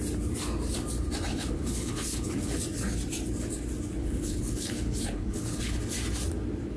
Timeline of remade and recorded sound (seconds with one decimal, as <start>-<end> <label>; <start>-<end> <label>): 0.0-1.3 recorded; 1.3-2.6 remade; 2.6-4.0 recorded; 4.0-5.8 remade; 5.8-6.8 recorded